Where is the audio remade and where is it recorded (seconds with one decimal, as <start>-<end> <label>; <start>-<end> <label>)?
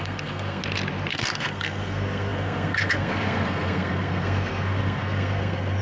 0.0-0.6 remade; 0.6-1.1 recorded; 1.1-5.8 remade